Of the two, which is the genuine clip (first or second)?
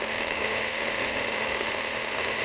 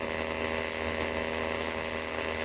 second